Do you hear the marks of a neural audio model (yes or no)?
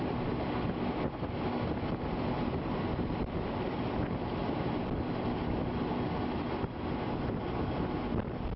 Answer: no